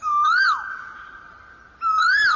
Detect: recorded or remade recorded